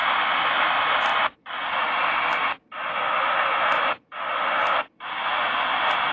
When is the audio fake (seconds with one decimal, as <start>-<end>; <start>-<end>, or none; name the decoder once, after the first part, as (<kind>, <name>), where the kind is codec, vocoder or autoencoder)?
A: none